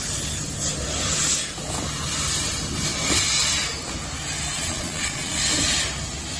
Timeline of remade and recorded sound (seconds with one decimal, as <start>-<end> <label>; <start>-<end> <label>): 0.0-4.5 recorded; 4.5-5.4 remade; 5.4-6.4 recorded